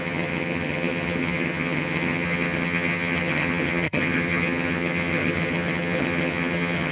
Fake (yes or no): yes